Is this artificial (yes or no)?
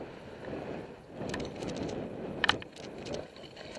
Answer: no